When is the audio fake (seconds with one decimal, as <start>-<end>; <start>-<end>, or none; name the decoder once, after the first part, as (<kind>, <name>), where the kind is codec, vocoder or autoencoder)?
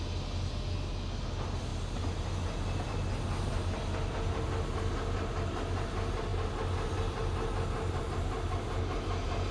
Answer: none